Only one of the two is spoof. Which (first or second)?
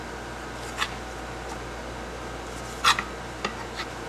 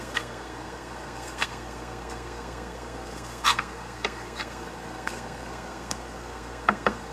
second